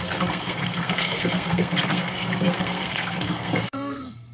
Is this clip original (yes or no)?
no